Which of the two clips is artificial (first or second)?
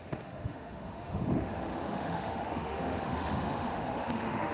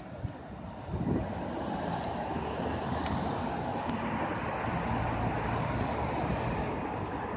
first